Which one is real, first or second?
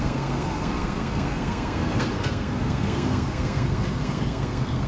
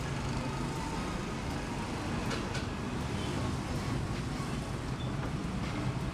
second